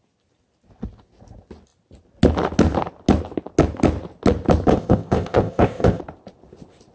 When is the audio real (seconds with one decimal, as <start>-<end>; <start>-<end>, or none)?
0.0-4.7; 6.0-6.9